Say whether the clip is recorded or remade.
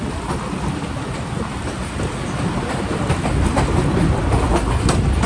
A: recorded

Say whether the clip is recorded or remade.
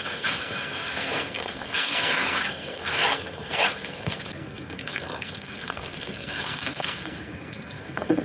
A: remade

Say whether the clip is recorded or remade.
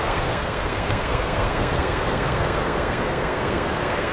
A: remade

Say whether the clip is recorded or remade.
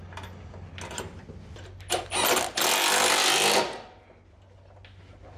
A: recorded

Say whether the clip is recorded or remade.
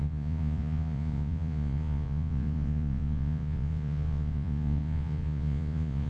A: remade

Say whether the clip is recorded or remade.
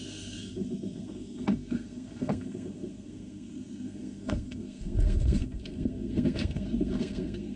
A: remade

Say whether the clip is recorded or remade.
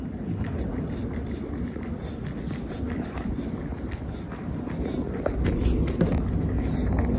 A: recorded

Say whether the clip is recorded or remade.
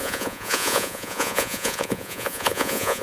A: remade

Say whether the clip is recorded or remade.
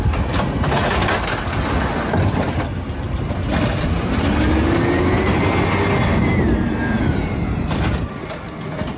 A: recorded